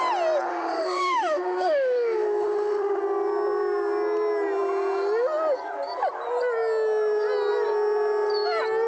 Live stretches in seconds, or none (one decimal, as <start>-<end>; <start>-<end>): 0.0-0.5; 3.0-8.9